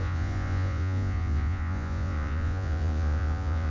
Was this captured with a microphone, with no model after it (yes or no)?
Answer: no